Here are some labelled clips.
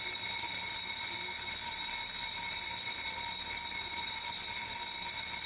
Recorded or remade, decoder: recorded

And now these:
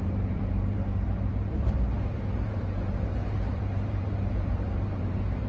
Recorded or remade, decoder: remade, vocoder, BigVGAN v2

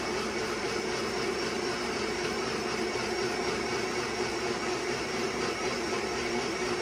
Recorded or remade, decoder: remade, vocoder, BigVGAN v2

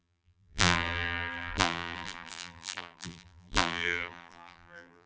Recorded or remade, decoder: remade, vocoder, BigVGAN v2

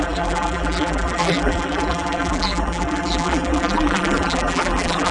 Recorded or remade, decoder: remade, vocoder, BigVGAN v2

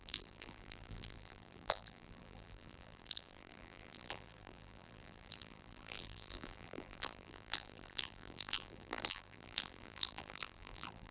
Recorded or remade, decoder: remade, vocoder, BigVGAN v2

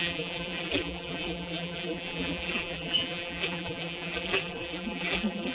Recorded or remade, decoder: remade, vocoder, BigVGAN v2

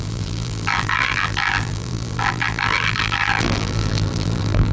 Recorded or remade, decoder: remade, vocoder, BigVGAN v2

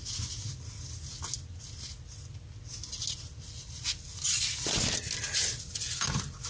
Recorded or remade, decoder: recorded